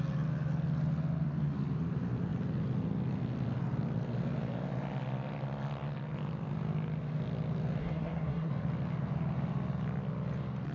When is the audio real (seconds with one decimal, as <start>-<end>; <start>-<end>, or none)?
0.0-7.8; 8.5-10.7